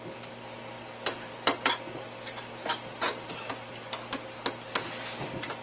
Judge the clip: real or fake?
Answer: real